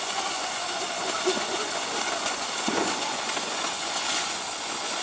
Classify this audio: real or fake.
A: fake